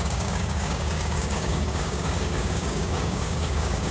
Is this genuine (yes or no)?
no